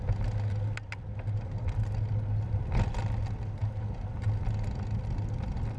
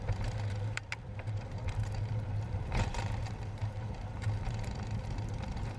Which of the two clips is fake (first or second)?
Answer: second